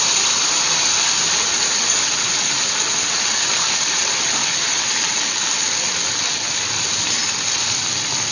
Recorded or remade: recorded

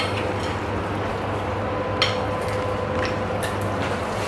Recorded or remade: recorded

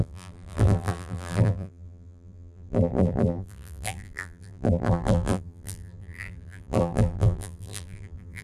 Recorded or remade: remade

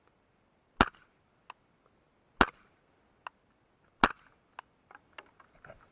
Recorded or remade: recorded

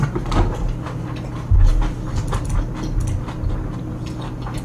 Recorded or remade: recorded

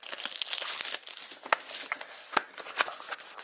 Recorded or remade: recorded